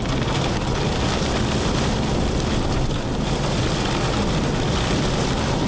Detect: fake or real real